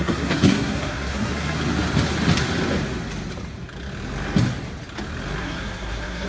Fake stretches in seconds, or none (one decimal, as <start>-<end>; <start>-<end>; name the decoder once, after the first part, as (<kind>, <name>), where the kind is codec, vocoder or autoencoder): 0.0-1.6 (codec, SNAC); 5.4-6.3